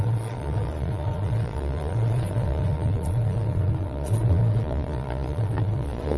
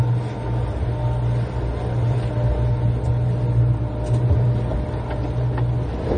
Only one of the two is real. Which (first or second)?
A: second